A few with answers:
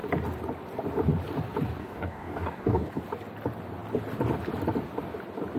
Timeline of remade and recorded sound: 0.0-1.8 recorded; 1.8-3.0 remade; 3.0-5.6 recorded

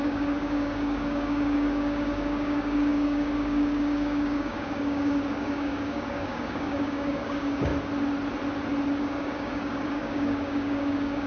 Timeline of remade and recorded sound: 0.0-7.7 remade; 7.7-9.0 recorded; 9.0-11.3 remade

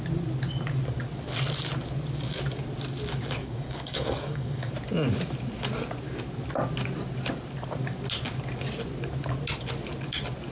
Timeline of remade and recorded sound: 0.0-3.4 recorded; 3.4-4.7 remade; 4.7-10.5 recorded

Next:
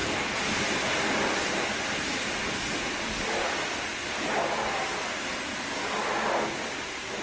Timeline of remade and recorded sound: 0.0-7.2 recorded

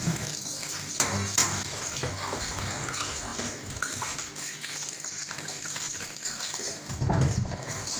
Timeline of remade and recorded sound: 0.0-8.0 remade

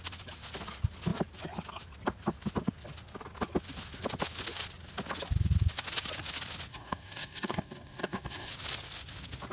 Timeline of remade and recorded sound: 0.0-6.7 recorded; 6.7-8.5 remade; 8.5-9.5 recorded

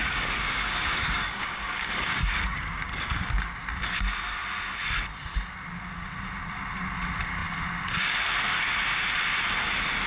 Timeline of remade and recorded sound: 0.0-3.5 remade; 3.5-10.1 recorded